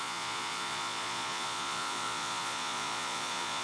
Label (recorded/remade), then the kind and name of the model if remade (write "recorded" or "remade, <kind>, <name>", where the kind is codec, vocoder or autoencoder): remade, vocoder, Vocos